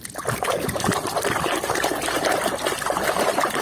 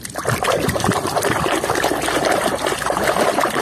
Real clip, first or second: second